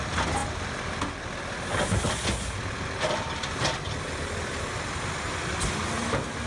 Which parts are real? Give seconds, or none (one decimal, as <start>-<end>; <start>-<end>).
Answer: 0.0-6.5